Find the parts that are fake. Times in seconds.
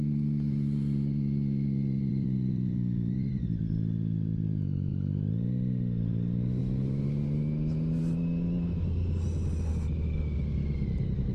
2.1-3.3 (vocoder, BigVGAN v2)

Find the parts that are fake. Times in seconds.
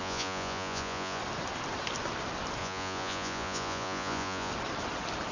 0.0-1.2 (vocoder, Vocos); 2.6-4.5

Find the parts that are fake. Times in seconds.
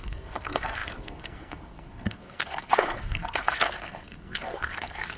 0.0-5.2 (codec, SNAC)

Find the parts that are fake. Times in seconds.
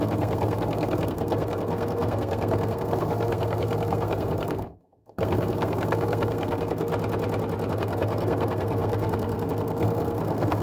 0.0-6.9 (codec, SNAC); 7.7-10.6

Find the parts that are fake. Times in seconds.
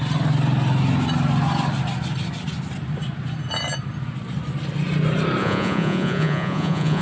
5.4-7.0 (vocoder, Vocos)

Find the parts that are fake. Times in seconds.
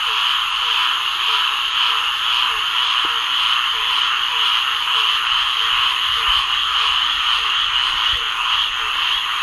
0.0-9.4 (vocoder, BigVGAN v2)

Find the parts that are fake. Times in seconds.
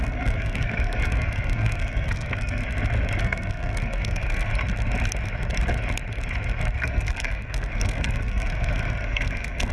0.0-2.6 (codec, SNAC); 3.2-4.5; 6.8-9.7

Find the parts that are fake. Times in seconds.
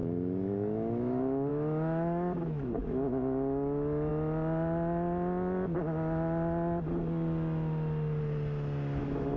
0.0-4.1 (autoencoder, DAC-VAE); 9.0-9.4